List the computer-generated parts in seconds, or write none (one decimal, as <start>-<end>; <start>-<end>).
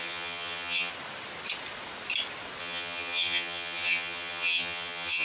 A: 0.0-0.9; 2.6-5.2